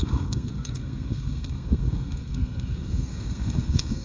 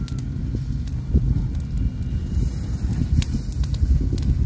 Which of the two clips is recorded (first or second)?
second